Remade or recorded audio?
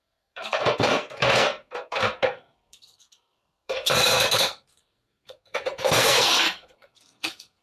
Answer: remade